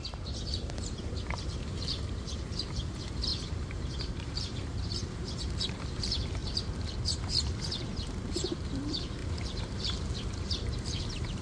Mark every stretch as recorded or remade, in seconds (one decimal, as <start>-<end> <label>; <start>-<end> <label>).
0.0-6.4 remade; 6.4-8.3 recorded; 8.3-11.4 remade